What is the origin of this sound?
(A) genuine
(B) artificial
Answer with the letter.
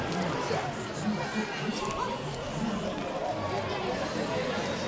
A